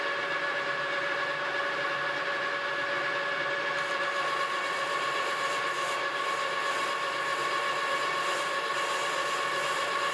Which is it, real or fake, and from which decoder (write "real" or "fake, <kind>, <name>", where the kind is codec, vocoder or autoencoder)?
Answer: real